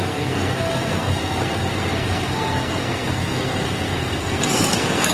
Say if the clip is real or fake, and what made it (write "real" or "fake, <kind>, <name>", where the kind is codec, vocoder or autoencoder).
fake, codec, SNAC